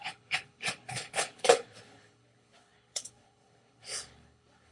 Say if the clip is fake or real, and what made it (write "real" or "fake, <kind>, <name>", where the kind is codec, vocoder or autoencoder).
fake, codec, HILCodec